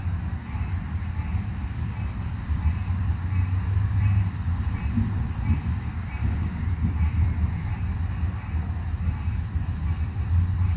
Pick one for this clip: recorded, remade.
recorded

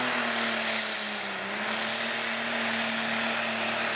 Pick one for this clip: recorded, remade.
recorded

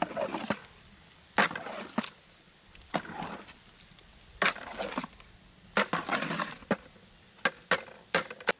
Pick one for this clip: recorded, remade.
recorded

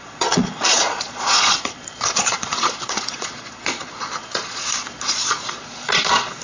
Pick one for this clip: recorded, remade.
remade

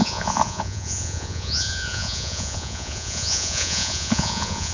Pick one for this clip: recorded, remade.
remade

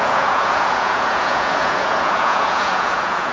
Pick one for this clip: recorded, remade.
remade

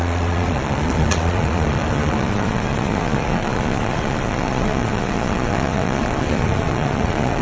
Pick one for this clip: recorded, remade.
remade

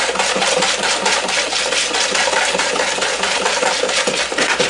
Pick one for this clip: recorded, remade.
recorded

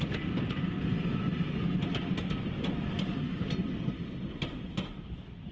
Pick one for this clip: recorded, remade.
recorded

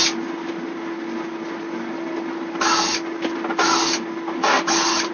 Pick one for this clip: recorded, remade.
recorded